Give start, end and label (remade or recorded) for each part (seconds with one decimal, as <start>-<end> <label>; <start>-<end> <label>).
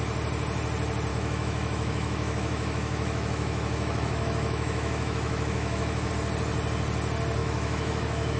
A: 0.0-1.1 recorded; 1.1-6.1 remade; 6.1-7.4 recorded; 7.4-8.4 remade